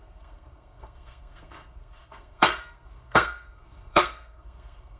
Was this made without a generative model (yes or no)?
no